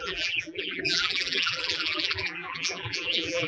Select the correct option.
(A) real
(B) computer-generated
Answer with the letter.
B